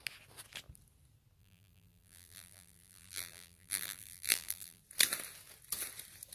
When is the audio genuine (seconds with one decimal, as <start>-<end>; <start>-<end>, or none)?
0.0-1.4; 4.8-6.3